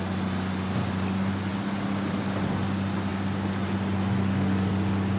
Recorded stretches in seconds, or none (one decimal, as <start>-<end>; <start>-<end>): 0.0-5.2